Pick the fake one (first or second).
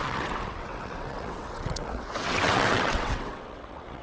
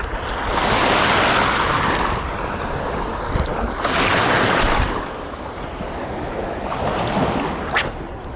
first